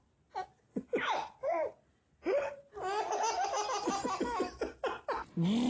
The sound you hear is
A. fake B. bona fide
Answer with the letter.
B